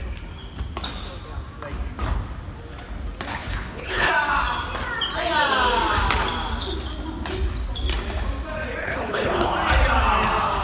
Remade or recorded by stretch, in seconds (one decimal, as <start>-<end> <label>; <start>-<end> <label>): 0.0-3.3 recorded; 3.3-4.1 remade; 4.1-8.8 recorded; 8.8-9.5 remade; 9.5-10.6 recorded